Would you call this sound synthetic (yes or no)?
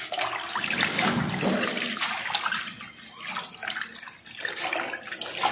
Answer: no